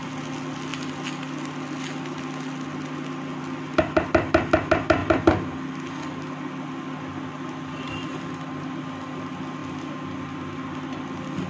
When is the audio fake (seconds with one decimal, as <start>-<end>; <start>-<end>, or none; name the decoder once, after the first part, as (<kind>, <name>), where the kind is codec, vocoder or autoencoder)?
none